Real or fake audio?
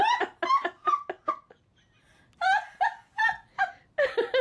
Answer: real